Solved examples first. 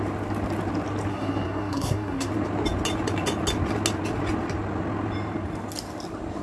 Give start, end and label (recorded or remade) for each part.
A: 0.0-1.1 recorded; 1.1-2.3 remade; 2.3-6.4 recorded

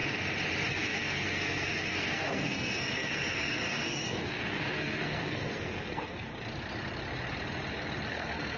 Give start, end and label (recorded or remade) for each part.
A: 0.0-0.7 recorded; 0.7-6.3 remade; 6.3-8.1 recorded; 8.1-8.6 remade

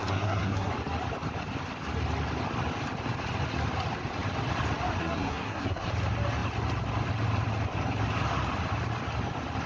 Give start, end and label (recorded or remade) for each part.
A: 0.0-0.7 remade; 0.7-5.0 recorded; 5.0-5.9 remade; 5.9-9.7 recorded